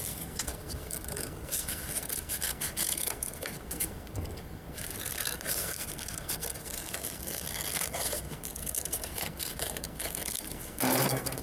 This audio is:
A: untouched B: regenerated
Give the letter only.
B